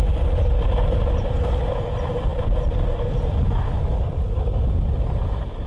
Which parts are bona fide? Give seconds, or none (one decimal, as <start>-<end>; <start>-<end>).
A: 0.0-5.7